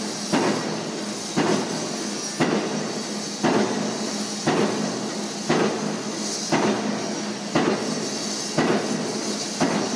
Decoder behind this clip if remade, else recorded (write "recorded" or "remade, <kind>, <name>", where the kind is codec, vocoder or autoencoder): recorded